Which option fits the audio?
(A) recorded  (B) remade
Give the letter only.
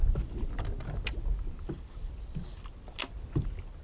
A